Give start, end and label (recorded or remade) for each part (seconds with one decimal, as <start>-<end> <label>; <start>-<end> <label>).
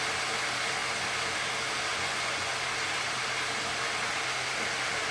0.0-1.9 recorded; 1.9-2.5 remade; 2.5-5.1 recorded